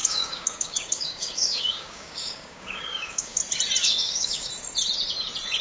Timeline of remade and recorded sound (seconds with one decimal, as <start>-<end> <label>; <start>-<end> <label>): 0.0-3.4 remade; 3.4-3.8 recorded; 3.8-4.5 remade; 4.5-5.6 recorded